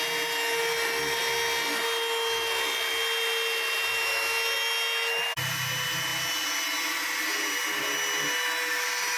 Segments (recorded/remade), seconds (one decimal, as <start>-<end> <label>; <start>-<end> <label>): 0.0-9.2 recorded